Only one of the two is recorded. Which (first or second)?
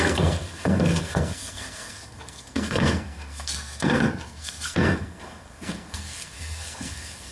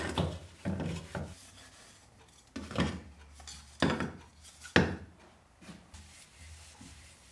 second